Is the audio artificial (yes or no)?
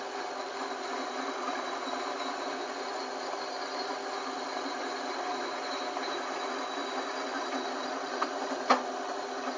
no